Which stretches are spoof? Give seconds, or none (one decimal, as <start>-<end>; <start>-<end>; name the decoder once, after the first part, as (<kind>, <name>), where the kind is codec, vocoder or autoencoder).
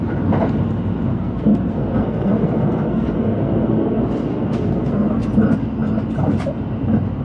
1.1-5.3 (codec, SNAC)